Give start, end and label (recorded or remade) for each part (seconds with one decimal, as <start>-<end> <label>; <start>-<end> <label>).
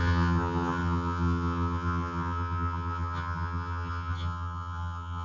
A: 0.0-5.2 remade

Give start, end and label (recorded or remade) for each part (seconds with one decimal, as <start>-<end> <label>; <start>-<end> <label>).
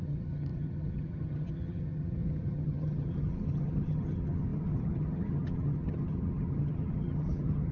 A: 0.0-7.7 remade